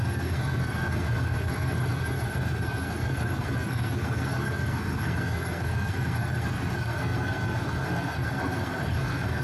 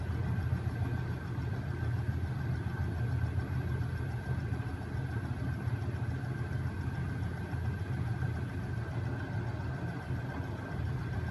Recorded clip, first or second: second